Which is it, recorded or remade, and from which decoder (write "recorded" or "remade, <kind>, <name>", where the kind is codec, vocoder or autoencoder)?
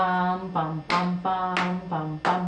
recorded